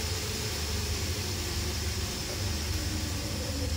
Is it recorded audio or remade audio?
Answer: remade